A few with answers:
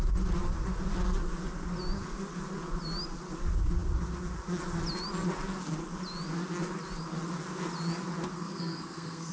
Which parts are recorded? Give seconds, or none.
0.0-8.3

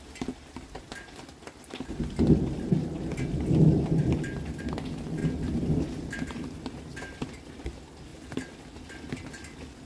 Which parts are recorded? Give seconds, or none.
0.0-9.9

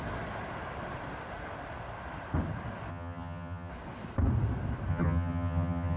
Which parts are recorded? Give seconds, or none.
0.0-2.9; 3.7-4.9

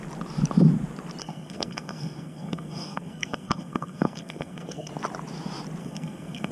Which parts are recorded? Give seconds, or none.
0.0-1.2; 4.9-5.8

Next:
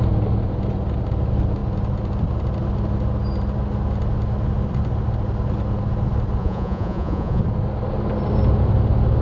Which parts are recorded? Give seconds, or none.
0.0-6.4; 7.4-9.2

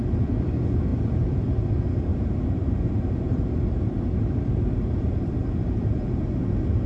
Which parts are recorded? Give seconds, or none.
0.0-0.9; 1.7-2.1; 6.2-6.9

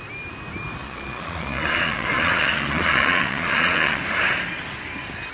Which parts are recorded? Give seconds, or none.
0.0-0.8; 4.0-5.3

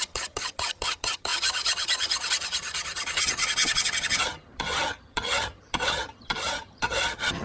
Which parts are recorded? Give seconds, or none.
none